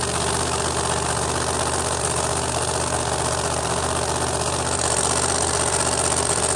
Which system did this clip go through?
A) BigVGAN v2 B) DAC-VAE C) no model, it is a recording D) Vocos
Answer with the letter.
C